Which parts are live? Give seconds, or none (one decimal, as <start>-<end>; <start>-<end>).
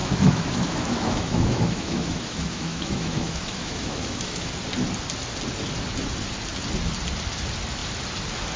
4.5-8.6